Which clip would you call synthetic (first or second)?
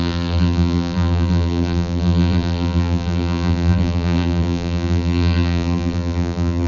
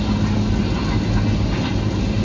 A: first